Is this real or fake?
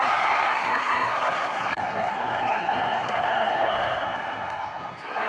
fake